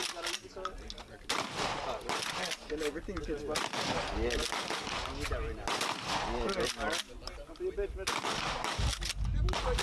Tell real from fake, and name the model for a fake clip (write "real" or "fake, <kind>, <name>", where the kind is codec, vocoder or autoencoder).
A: real